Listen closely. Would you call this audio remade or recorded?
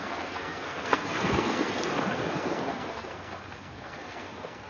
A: remade